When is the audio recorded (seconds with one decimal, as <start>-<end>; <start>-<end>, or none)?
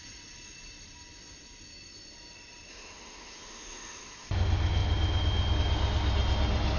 0.0-2.7; 4.3-6.8